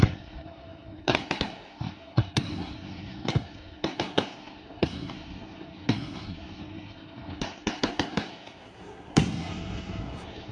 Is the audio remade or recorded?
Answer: remade